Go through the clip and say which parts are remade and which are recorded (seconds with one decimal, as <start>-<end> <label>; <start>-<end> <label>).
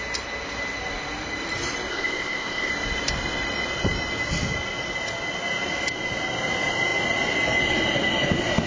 0.0-1.9 recorded; 1.9-2.7 remade; 2.7-8.7 recorded